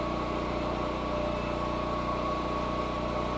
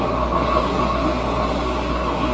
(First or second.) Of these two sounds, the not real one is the second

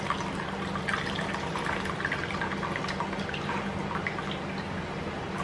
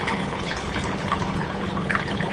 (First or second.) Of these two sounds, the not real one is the second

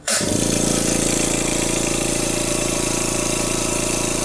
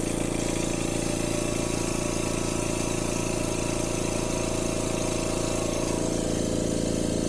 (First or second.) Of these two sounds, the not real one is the first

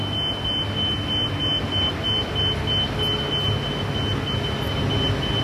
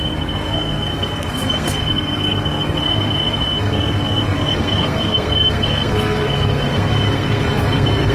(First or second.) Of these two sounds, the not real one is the second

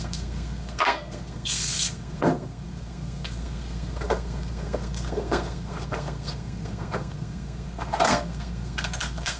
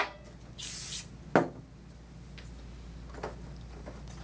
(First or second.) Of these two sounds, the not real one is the first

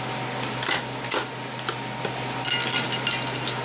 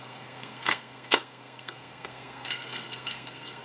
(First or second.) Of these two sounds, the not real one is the second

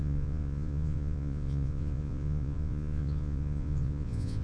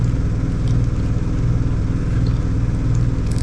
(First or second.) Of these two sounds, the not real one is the first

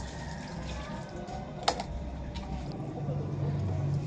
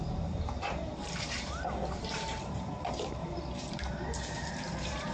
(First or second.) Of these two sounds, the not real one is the second